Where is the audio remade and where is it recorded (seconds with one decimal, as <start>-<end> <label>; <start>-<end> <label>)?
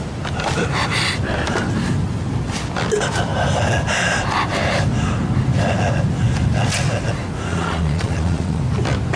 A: 0.0-7.5 recorded; 7.5-8.6 remade; 8.6-9.2 recorded